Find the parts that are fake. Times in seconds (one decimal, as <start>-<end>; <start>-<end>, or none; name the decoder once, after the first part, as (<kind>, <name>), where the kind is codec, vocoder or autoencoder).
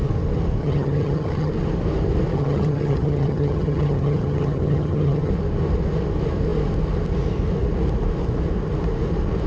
0.6-1.5 (vocoder, HiFi-GAN); 2.3-5.3